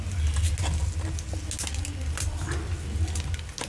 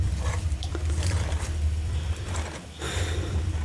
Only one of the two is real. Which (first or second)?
first